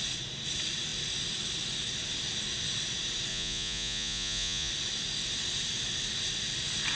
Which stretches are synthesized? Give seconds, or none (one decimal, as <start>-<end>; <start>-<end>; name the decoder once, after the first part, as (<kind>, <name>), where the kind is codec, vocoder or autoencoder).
3.3-4.7 (vocoder, Vocos)